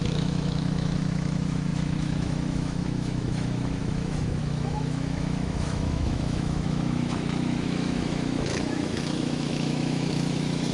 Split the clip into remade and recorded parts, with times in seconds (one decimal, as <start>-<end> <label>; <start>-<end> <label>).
0.0-10.7 remade